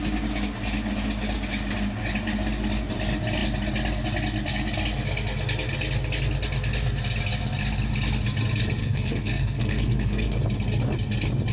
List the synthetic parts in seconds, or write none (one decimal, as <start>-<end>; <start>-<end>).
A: 8.8-10.4